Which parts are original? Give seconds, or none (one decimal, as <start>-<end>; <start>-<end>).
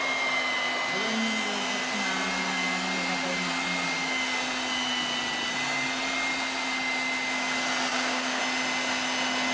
0.0-7.9; 8.4-9.5